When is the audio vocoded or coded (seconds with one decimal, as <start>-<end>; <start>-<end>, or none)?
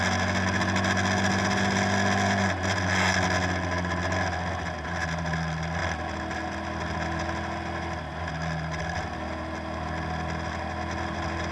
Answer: none